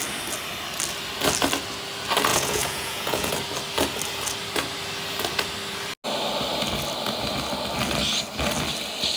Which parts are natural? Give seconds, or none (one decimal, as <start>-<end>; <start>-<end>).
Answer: 0.0-2.3; 3.3-9.2